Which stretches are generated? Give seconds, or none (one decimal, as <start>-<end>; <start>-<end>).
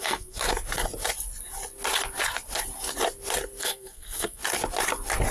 0.0-0.4; 3.6-4.4